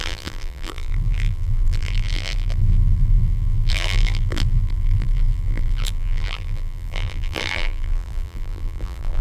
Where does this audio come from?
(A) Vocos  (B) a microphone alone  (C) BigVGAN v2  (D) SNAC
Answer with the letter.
C